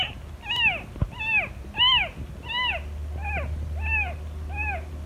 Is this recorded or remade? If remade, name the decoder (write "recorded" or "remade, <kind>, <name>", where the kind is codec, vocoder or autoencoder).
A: recorded